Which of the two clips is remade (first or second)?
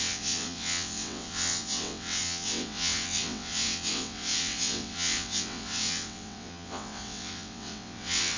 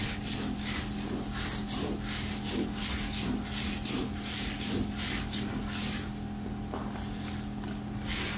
first